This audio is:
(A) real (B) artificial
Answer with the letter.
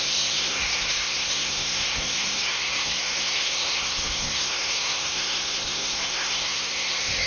B